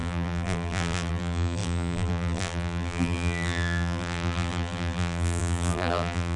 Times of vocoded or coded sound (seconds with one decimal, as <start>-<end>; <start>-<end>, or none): 0.0-6.4